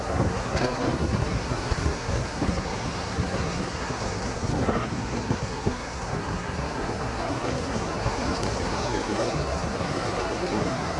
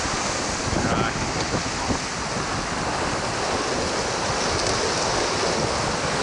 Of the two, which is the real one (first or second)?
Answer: second